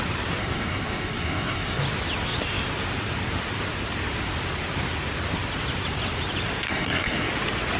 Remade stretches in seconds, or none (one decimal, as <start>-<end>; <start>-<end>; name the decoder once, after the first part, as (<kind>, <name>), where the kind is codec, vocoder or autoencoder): 0.4-1.8 (codec, SNAC); 6.7-7.3